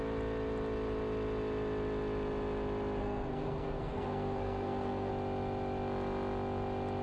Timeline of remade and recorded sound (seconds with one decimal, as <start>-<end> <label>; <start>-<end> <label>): 0.0-3.0 recorded; 3.0-5.1 remade; 5.1-7.0 recorded